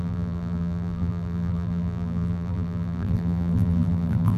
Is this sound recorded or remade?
remade